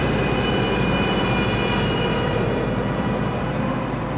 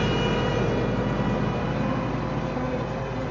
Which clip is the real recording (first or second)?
second